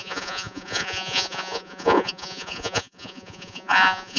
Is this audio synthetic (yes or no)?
yes